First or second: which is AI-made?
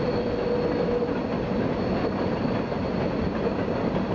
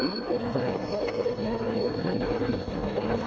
second